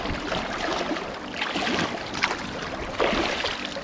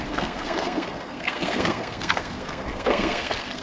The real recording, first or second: first